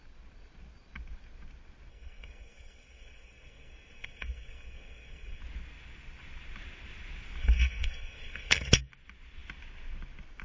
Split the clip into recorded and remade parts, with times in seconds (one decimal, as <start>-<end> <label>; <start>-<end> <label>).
0.0-1.9 recorded; 1.9-5.4 remade; 5.4-7.4 recorded; 7.4-8.9 remade; 8.9-10.4 recorded